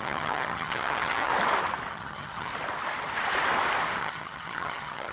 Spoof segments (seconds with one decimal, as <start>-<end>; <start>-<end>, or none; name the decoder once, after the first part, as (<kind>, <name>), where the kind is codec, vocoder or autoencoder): 0.0-1.3 (vocoder, HiFi-GAN); 1.9-2.5; 4.0-5.1